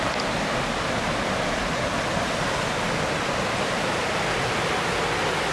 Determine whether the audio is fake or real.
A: real